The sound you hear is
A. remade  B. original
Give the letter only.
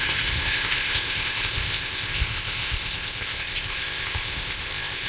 A